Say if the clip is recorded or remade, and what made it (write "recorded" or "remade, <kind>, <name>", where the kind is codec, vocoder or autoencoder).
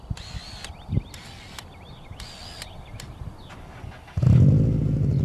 recorded